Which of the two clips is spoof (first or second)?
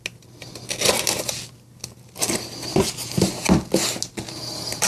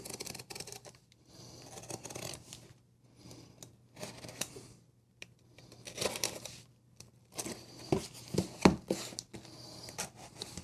second